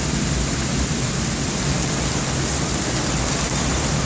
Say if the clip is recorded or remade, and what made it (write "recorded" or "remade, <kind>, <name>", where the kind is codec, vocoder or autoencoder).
recorded